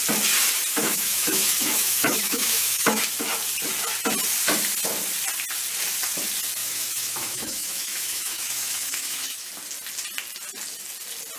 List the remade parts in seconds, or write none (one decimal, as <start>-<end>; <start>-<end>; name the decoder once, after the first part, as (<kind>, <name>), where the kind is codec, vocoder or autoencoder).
0.8-3.0 (autoencoder, DAC-VAE); 6.6-9.5